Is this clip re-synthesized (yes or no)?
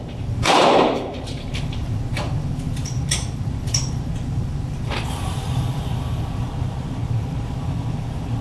yes